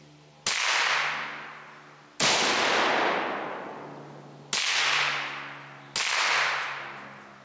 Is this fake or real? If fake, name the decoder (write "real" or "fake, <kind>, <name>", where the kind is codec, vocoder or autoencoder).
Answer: real